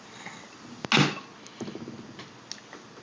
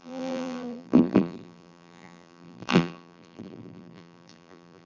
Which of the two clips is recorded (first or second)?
first